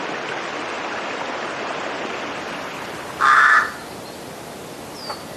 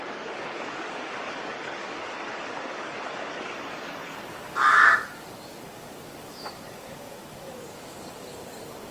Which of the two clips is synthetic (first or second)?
second